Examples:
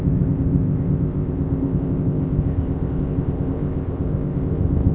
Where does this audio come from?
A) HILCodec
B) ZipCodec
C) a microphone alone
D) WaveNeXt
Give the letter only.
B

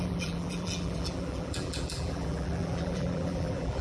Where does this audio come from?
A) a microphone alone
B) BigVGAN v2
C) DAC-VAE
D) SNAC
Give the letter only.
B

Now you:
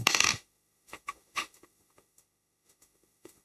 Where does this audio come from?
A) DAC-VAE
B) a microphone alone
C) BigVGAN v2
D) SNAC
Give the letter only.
A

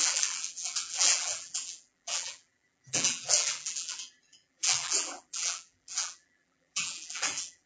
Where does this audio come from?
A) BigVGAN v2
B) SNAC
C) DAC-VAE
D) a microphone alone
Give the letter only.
A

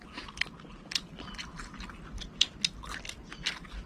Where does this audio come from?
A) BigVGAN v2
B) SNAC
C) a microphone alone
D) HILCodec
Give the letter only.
C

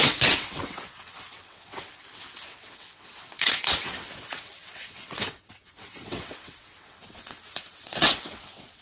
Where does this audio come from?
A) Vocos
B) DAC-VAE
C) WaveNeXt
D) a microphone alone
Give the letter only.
C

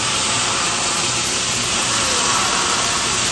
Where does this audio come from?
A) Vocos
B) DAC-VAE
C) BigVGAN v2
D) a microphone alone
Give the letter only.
C